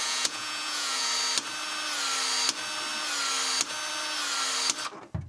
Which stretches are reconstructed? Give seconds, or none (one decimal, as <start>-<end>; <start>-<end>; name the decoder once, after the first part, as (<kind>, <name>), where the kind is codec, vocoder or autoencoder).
0.0-1.1 (vocoder, Vocos)